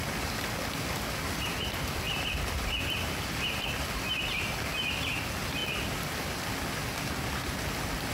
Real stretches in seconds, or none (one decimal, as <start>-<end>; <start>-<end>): 0.0-8.1